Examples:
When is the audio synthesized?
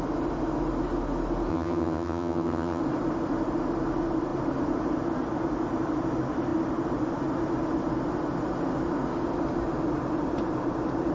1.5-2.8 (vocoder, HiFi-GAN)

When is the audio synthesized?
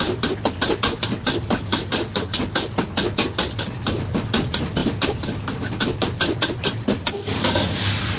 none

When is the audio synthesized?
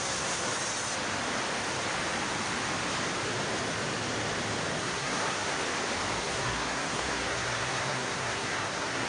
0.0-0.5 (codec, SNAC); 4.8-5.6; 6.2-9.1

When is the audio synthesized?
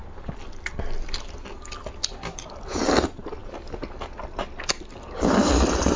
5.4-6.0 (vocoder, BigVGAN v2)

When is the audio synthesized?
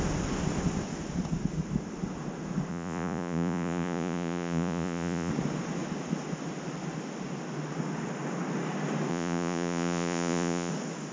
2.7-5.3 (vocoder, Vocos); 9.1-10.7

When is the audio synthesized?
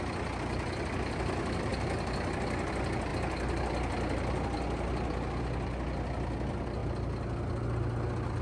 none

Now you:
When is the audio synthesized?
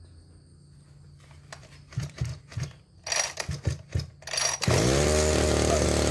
none